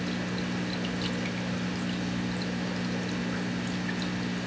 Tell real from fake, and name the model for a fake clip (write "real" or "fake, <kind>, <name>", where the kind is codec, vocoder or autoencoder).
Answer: real